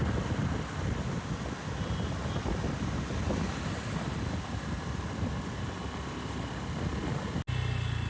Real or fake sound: real